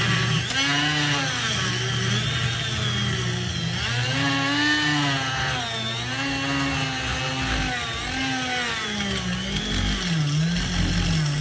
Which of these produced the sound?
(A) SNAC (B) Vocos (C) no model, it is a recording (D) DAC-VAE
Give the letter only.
C